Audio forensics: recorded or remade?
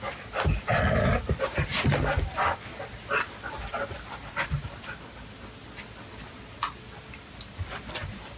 recorded